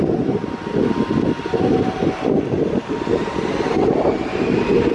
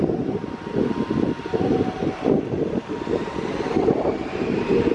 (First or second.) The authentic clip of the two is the first